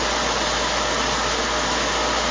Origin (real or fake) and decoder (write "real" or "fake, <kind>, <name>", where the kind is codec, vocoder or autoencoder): real